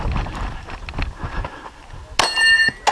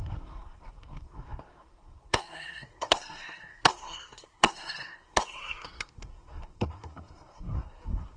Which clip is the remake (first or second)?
second